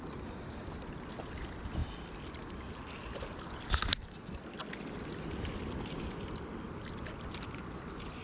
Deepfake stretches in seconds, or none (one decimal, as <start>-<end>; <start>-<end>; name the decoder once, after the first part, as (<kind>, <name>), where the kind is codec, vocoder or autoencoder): none